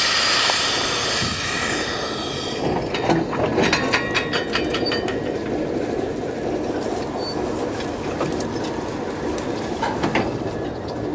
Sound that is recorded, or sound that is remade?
recorded